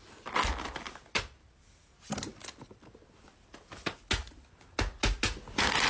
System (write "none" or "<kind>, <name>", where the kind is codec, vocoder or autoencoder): none